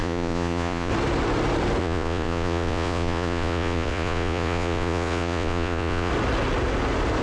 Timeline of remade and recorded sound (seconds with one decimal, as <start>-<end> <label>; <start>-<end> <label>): 0.0-0.9 remade; 0.9-1.8 recorded; 1.8-6.1 remade; 6.1-7.2 recorded